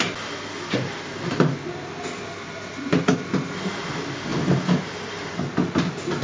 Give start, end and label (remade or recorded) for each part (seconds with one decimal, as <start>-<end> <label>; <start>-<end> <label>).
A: 0.0-4.3 recorded; 4.3-5.3 remade; 5.3-6.2 recorded